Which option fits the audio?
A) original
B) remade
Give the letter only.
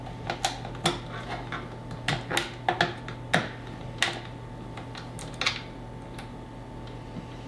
A